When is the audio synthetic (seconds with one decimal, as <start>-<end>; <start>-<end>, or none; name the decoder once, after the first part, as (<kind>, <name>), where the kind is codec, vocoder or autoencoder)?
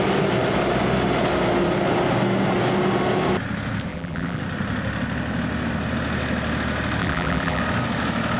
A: 3.9-4.4 (vocoder, BigVGAN v2); 7.0-7.6